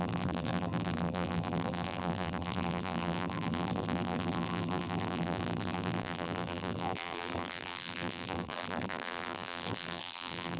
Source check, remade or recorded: remade